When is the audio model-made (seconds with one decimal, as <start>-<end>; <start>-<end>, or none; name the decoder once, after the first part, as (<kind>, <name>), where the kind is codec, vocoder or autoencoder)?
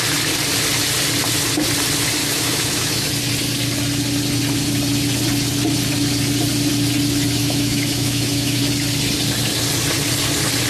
2.2-3.1 (autoencoder, DAC-VAE); 7.4-8.6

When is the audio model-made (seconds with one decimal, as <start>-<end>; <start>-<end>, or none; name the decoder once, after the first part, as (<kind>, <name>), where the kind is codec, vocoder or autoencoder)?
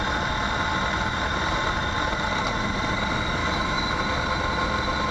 3.4-4.0 (autoencoder, DAC-VAE)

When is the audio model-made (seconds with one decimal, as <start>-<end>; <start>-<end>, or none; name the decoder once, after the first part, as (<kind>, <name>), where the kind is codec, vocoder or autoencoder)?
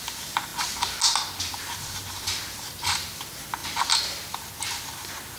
none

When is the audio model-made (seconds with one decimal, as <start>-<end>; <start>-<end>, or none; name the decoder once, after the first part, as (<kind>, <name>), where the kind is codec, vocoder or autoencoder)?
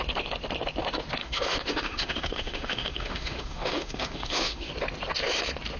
1.2-4.7 (autoencoder, DAC-VAE)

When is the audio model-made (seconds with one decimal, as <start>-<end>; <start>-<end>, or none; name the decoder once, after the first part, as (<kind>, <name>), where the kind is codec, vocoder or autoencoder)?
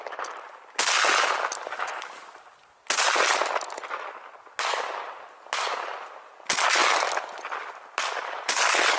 none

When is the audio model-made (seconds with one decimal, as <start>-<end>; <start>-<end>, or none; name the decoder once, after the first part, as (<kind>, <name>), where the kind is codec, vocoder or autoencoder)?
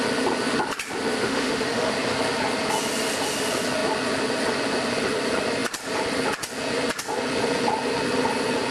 1.2-1.9 (autoencoder, DAC-VAE)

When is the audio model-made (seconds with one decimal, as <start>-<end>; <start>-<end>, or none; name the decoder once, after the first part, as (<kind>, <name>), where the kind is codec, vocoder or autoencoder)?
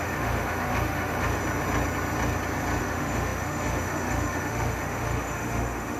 0.0-1.4 (autoencoder, DAC-VAE); 2.8-6.0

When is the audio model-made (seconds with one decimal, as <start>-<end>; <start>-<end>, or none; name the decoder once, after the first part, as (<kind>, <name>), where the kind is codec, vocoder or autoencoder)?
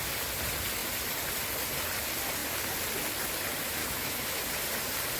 3.8-4.4 (autoencoder, DAC-VAE)